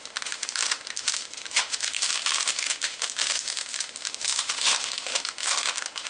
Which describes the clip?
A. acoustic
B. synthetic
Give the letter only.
B